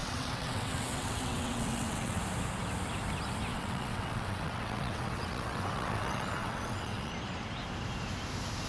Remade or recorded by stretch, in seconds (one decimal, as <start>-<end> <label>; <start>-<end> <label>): 0.0-2.2 remade; 2.2-3.5 recorded; 3.5-7.1 remade; 7.1-8.7 recorded